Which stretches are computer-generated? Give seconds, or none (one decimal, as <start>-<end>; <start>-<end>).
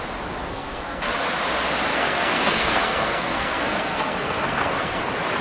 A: 0.4-1.1; 1.9-5.0